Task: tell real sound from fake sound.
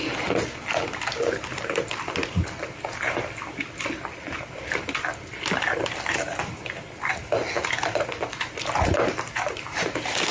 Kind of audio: fake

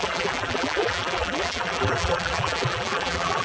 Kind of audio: fake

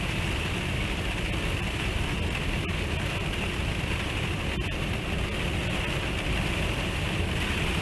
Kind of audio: real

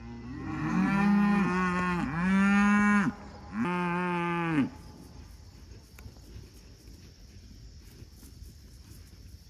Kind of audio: real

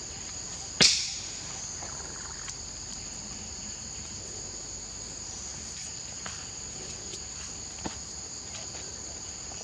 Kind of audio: fake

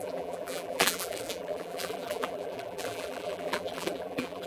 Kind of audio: fake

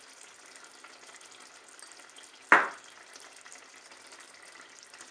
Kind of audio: real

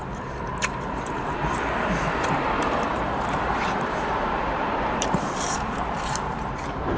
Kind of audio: fake